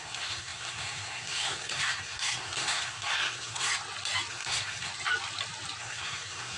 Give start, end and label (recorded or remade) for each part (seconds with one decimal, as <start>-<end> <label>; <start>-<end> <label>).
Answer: 0.0-3.7 remade; 3.7-4.3 recorded; 4.3-4.9 remade; 4.9-5.8 recorded; 5.8-6.6 remade